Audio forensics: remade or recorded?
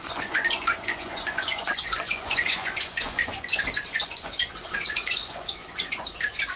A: remade